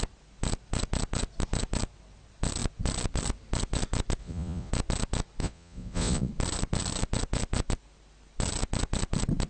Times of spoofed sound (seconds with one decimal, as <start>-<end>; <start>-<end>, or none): 4.2-4.7; 5.4-6.3